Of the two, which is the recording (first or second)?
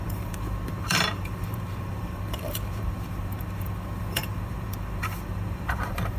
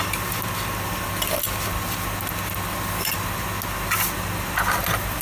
second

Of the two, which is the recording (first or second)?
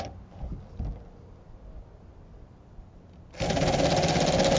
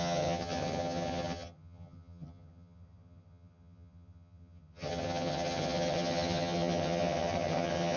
first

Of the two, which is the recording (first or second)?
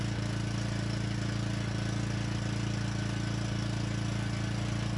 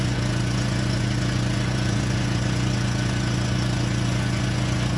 first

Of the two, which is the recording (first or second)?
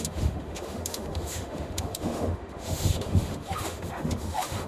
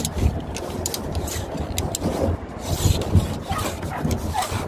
second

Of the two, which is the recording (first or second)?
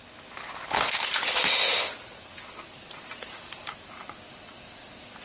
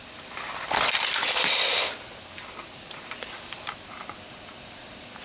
first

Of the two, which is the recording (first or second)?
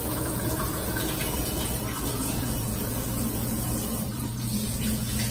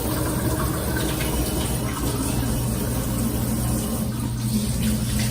second